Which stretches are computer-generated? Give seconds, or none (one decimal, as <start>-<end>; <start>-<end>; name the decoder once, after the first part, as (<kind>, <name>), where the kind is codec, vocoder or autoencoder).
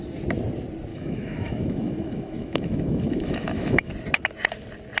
0.9-3.9 (autoencoder, DAC-VAE)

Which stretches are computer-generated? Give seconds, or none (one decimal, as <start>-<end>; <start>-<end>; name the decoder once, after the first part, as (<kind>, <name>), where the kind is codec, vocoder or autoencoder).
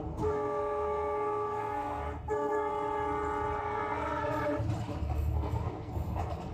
0.0-2.7 (codec, SNAC); 3.6-4.2; 5.0-6.5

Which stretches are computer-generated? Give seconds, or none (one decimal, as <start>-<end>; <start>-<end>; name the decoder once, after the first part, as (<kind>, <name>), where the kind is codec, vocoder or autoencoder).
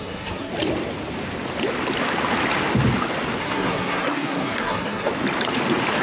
0.0-0.5 (codec, SNAC); 3.4-5.1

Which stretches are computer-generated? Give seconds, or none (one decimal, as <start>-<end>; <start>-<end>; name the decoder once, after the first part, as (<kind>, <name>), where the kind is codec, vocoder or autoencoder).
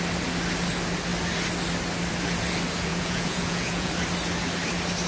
2.9-3.9 (vocoder, Vocos)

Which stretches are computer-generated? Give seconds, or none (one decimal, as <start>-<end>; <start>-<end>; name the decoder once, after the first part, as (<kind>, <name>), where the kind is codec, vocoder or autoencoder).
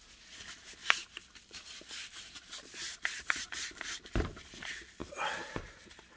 0.8-4.5 (vocoder, BigVGAN v2); 5.0-6.2